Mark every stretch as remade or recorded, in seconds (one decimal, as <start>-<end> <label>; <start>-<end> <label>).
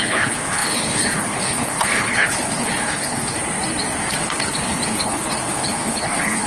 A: 0.0-3.4 remade; 3.4-4.1 recorded; 4.1-6.5 remade